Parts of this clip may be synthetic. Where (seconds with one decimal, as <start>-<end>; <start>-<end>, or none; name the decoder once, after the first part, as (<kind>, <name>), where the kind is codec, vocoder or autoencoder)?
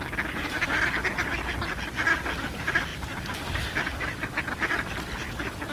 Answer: 2.9-4.4 (vocoder, BigVGAN v2)